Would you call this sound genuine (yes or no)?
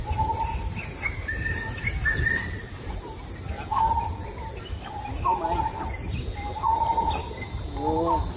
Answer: yes